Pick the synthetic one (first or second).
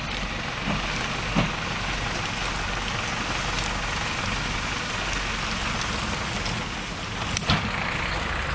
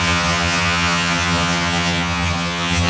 second